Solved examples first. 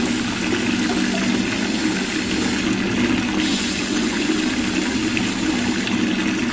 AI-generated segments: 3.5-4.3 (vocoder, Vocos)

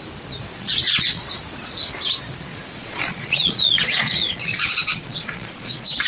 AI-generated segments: 0.5-1.3 (vocoder, Vocos); 2.5-6.1

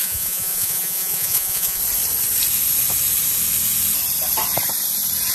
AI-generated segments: 0.0-1.8 (vocoder, Vocos)

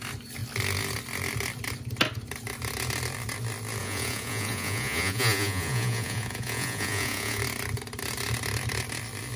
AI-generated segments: 3.8-7.4 (vocoder, Vocos)

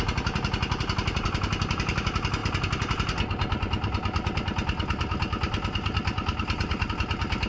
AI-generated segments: none

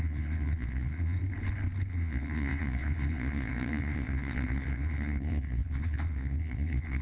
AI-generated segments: 0.0-1.2 (vocoder, Vocos); 1.9-7.0

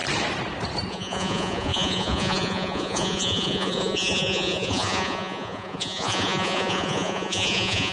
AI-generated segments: 0.9-7.9 (vocoder, Vocos)